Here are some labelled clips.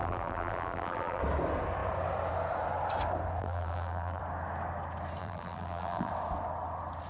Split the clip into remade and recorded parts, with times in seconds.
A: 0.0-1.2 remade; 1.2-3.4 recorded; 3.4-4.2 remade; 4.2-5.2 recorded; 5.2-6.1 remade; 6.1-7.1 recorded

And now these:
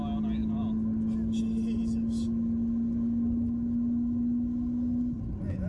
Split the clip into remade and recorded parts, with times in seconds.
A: 0.0-5.7 recorded

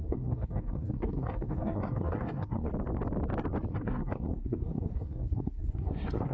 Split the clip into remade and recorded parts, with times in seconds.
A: 0.0-2.7 remade; 2.7-3.7 recorded; 3.7-6.3 remade

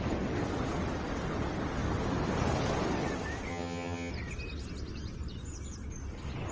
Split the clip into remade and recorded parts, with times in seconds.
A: 0.0-3.5 recorded; 3.5-4.1 remade; 4.1-6.5 recorded